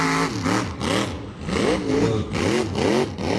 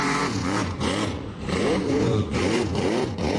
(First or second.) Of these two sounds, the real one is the first